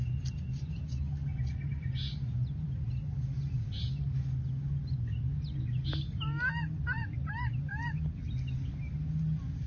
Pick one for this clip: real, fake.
real